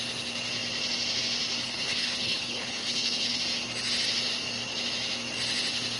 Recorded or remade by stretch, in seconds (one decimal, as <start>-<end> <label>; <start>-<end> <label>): 0.0-1.6 recorded; 1.6-3.4 remade; 3.4-6.0 recorded